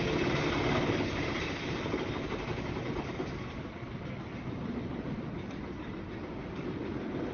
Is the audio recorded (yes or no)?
yes